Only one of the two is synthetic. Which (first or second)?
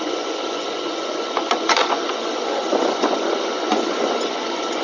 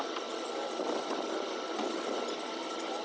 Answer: first